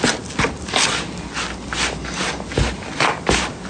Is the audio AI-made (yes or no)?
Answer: no